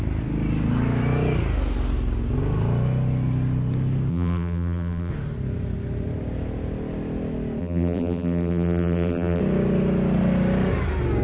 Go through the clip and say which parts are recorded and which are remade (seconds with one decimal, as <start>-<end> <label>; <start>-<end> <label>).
0.0-4.1 recorded; 4.1-5.1 remade; 5.1-7.6 recorded; 7.6-9.4 remade; 9.4-11.2 recorded